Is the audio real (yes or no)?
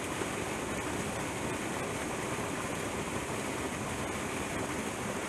yes